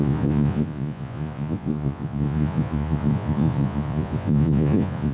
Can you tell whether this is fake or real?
fake